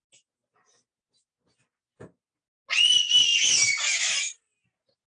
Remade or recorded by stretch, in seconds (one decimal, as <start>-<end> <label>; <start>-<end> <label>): 0.0-5.1 recorded